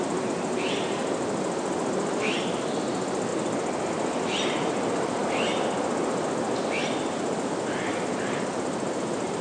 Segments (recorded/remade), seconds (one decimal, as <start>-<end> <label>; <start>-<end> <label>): 0.0-9.4 recorded